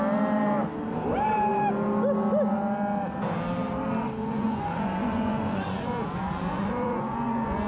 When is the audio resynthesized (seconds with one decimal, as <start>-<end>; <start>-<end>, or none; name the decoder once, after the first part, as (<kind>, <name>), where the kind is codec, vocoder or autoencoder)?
4.2-7.7 (vocoder, Vocos)